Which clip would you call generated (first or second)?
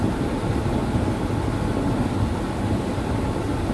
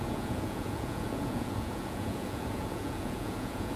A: second